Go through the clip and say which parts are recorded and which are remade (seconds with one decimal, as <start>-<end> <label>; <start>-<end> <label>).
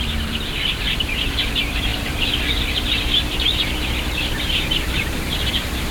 0.0-5.9 remade